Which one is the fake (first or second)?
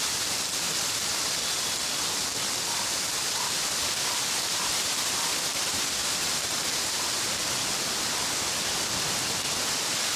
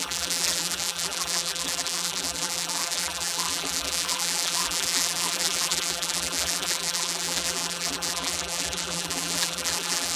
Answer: second